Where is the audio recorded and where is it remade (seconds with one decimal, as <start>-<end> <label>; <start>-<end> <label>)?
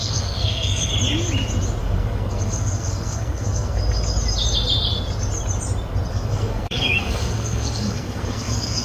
0.0-0.9 remade; 0.9-1.8 recorded; 1.8-3.8 remade; 3.8-6.1 recorded; 6.1-8.8 remade